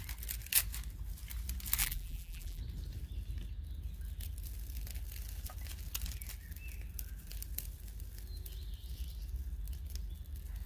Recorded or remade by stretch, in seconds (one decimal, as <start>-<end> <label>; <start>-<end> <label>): 0.0-1.8 recorded; 1.8-2.6 remade; 2.6-10.7 recorded

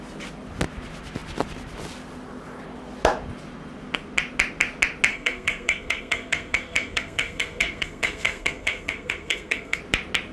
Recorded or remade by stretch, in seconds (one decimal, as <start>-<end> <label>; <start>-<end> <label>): 0.0-5.1 recorded; 5.1-9.8 remade; 9.8-10.3 recorded

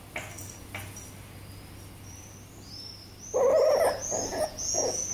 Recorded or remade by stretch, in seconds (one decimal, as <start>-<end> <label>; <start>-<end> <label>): 0.0-4.3 recorded; 4.3-5.1 remade

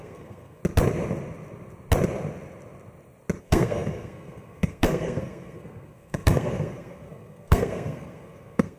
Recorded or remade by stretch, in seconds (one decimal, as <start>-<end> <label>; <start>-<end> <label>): 0.0-0.6 remade; 0.6-3.4 recorded; 3.4-8.8 remade